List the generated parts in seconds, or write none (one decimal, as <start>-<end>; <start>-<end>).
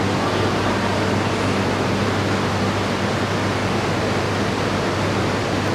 none